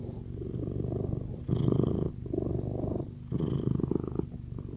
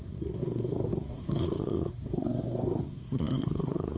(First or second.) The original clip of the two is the first